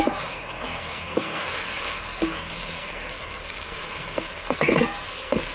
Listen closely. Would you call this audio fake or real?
fake